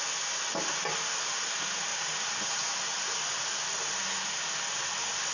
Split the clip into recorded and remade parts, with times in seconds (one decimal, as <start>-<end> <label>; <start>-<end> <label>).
0.0-5.3 recorded